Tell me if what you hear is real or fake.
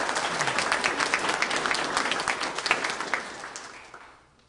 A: real